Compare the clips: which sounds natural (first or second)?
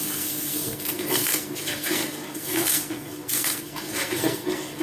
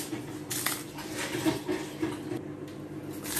second